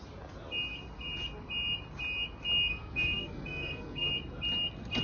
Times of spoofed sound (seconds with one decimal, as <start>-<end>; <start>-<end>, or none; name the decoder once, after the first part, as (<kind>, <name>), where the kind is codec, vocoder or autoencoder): 2.7-4.1 (codec, SNAC)